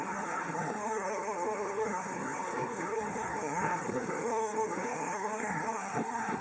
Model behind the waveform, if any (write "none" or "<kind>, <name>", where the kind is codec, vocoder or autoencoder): codec, SNAC